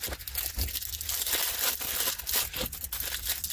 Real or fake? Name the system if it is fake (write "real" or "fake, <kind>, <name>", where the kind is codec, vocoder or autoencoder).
real